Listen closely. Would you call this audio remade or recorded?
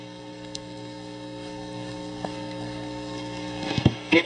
remade